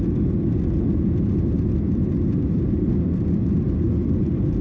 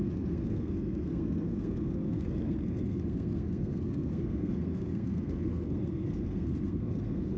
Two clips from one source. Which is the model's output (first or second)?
second